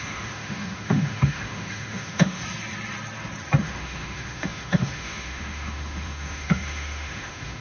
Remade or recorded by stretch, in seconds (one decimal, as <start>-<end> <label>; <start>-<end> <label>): 0.0-2.4 remade; 2.4-3.6 recorded; 3.6-7.6 remade